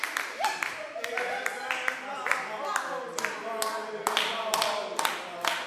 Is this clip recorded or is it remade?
recorded